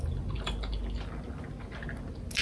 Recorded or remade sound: recorded